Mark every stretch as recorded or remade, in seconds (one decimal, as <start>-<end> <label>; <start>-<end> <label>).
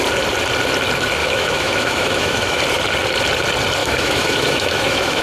0.0-1.2 recorded; 1.2-2.6 remade; 2.6-3.8 recorded; 3.8-5.2 remade